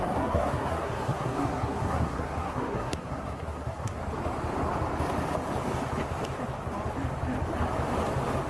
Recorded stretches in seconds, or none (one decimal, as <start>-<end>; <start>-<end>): 4.0-8.5